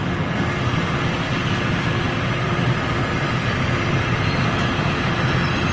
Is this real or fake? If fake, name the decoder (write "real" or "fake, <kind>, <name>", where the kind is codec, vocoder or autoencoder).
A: real